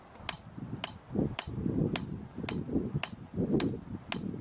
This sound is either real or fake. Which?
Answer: real